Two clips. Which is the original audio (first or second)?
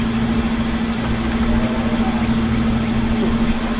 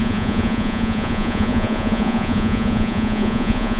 first